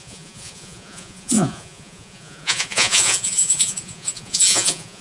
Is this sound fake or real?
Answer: fake